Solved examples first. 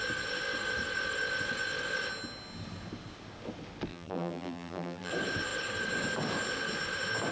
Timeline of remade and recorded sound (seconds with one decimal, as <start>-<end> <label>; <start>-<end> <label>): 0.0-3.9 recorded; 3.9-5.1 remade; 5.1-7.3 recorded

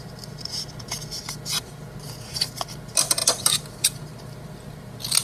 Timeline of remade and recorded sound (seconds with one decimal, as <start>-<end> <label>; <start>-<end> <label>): 0.0-5.2 recorded

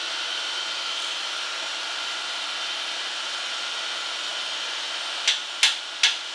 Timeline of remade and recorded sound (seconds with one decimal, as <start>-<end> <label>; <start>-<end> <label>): 0.0-0.6 remade; 0.6-6.3 recorded